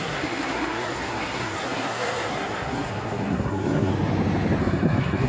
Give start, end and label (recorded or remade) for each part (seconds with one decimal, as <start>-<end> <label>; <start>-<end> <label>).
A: 0.0-3.9 remade; 3.9-4.6 recorded; 4.6-5.3 remade

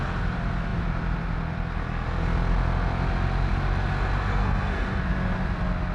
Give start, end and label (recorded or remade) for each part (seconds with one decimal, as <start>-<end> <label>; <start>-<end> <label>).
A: 0.0-4.3 recorded; 4.3-5.0 remade; 5.0-5.9 recorded

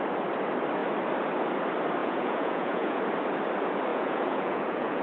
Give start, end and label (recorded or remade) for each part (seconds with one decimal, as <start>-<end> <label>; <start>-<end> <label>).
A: 0.0-2.0 recorded; 2.0-3.0 remade; 3.0-3.9 recorded; 3.9-5.0 remade

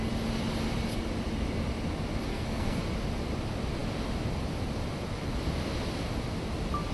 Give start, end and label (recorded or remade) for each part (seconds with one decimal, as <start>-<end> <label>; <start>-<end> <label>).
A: 0.0-2.3 recorded; 2.3-2.8 remade; 2.8-6.9 recorded